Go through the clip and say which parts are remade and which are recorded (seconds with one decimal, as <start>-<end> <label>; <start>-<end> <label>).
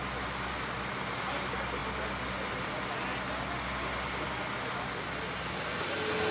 0.0-6.3 recorded